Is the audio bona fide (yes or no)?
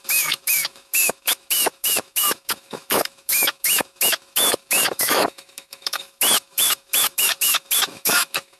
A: no